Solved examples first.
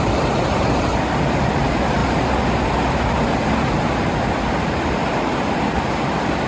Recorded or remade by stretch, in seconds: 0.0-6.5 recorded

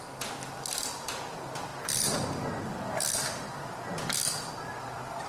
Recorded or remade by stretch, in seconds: 0.0-5.3 recorded

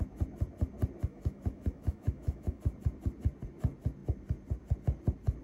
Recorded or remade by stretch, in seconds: 0.0-1.1 recorded; 1.1-2.6 remade; 2.6-5.4 recorded

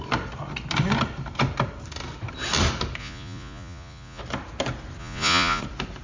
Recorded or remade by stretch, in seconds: 0.0-3.0 recorded; 3.0-4.2 remade; 4.2-5.0 recorded; 5.0-5.6 remade; 5.6-6.0 recorded

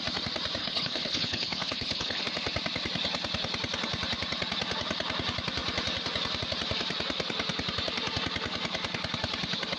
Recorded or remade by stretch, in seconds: 0.0-0.6 recorded; 0.6-2.2 remade; 2.2-9.8 recorded

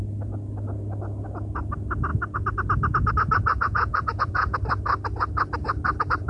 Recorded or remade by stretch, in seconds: 0.0-3.5 recorded; 3.5-4.6 remade; 4.6-6.3 recorded